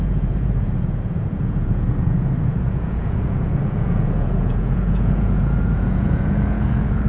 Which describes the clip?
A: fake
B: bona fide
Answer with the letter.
A